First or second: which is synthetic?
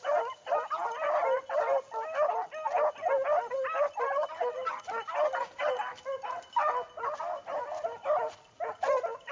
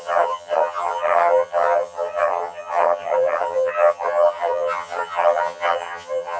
second